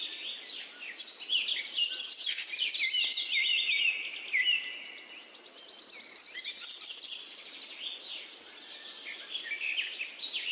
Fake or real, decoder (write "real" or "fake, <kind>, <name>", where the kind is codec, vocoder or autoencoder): real